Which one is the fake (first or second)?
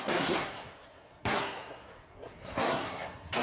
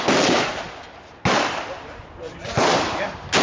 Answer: first